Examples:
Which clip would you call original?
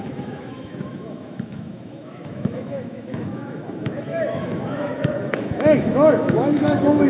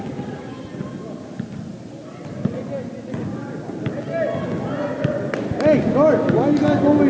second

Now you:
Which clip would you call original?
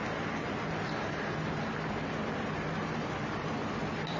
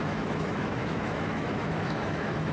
first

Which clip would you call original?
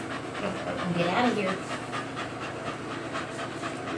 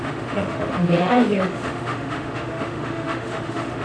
first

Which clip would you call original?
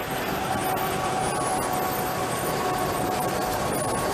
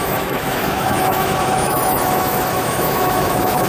first